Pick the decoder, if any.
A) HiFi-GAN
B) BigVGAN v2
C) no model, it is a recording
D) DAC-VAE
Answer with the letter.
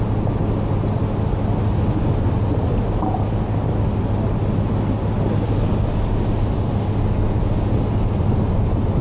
C